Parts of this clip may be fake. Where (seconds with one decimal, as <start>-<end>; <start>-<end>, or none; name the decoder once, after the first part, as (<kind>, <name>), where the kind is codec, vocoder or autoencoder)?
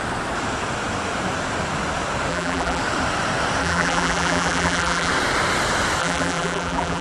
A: 2.3-2.8 (vocoder, BigVGAN v2); 3.6-5.1; 6.0-7.0